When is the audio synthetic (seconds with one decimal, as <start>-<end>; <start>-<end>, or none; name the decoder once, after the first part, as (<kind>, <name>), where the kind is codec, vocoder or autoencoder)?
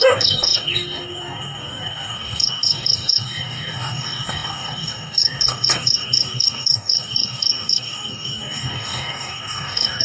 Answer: 0.0-10.0 (codec, DAC)